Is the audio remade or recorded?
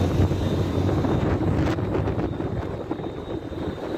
recorded